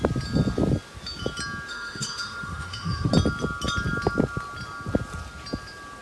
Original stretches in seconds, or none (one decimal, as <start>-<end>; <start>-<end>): 0.0-1.7; 3.1-6.0